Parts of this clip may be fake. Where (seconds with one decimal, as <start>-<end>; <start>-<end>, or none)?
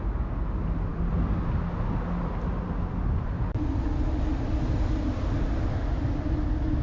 none